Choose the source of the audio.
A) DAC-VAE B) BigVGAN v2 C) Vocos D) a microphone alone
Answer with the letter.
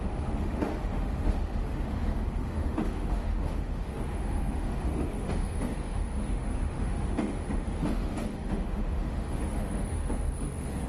A